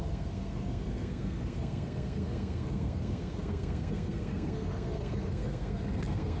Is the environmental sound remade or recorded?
remade